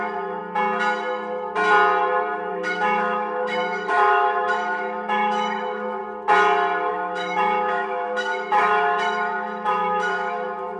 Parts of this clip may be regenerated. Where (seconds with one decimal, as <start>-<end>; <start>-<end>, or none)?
0.0-0.4; 2.5-6.0; 6.9-10.8

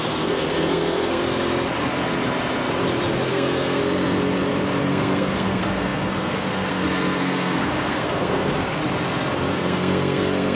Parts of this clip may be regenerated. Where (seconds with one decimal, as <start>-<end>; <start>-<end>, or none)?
0.0-1.2; 3.3-3.8; 4.8-8.8; 9.5-10.5